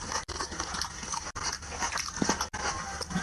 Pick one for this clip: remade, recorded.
recorded